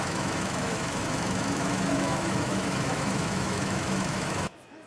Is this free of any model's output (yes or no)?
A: no